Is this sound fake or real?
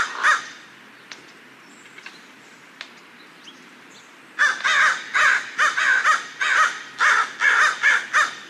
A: real